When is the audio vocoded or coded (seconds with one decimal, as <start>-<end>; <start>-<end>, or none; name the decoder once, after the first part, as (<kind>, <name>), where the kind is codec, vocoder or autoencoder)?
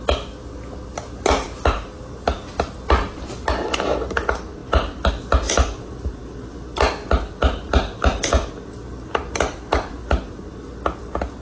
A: none